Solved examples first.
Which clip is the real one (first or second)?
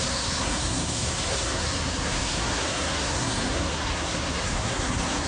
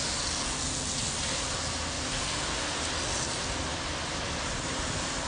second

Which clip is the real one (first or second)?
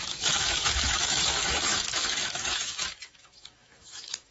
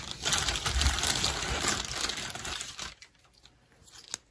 second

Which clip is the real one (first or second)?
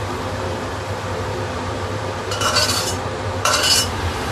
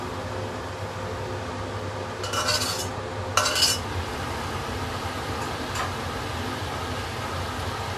second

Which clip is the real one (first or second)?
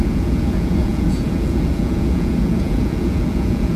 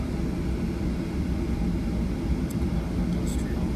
second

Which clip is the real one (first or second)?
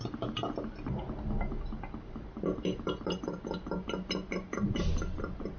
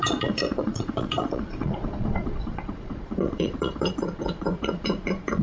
first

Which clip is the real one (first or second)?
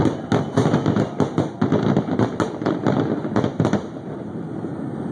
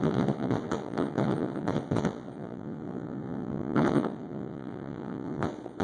first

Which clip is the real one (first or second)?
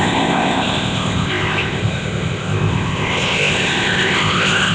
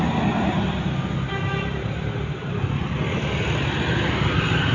second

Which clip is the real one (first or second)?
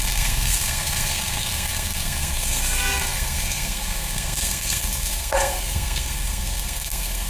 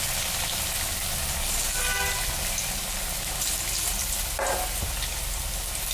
second